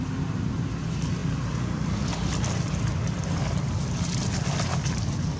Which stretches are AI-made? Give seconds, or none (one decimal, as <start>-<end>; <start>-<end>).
none